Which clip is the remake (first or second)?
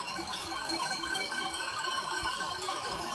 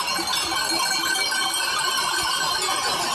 first